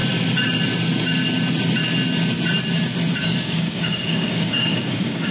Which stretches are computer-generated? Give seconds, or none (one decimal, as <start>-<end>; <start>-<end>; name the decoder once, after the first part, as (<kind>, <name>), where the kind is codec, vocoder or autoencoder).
3.2-5.3 (codec, DAC)

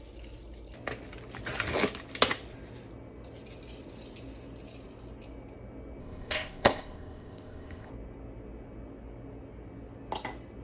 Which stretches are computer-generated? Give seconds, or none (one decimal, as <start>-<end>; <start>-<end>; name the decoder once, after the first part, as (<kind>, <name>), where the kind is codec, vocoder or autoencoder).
6.0-7.9 (codec, ZipCodec)